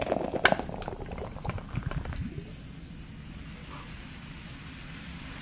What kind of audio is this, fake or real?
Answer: real